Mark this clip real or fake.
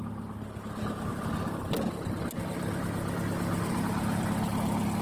real